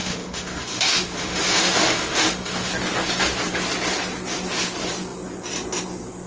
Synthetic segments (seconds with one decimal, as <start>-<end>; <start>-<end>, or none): 0.0-2.7

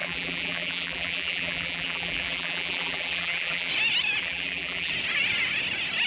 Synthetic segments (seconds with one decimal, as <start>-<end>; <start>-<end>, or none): 0.0-3.7; 4.2-4.9

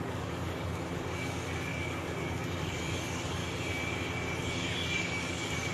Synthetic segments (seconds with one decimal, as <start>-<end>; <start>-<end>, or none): 0.0-3.4; 4.4-5.7

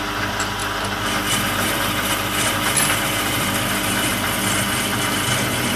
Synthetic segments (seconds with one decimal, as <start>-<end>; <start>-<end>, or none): 0.6-4.1